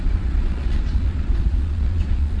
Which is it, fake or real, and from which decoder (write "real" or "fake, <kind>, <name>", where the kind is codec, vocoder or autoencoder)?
fake, vocoder, Vocos